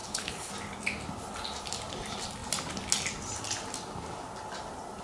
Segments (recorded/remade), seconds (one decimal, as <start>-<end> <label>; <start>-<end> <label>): 0.0-0.5 remade; 0.5-5.0 recorded